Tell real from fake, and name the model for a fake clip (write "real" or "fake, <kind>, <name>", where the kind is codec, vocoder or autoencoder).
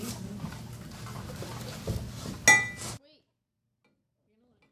real